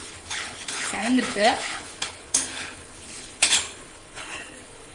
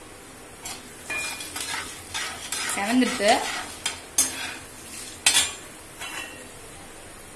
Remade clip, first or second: first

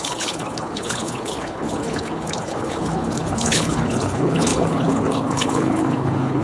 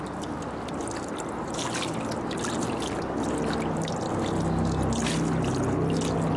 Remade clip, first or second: first